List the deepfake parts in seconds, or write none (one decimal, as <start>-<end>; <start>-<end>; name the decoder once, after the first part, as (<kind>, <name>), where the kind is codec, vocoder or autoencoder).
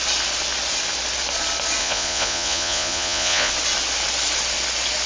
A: 1.8-3.5 (vocoder, Vocos)